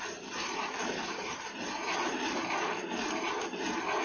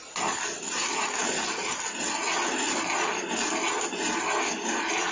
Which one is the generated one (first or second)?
first